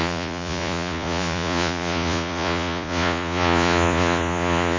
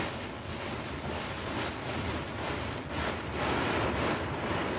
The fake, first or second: first